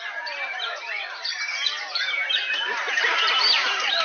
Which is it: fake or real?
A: fake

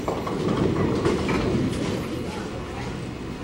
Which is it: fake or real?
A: real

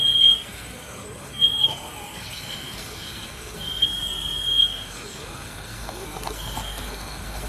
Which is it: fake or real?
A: fake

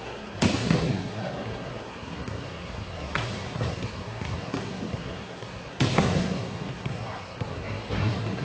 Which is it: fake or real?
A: fake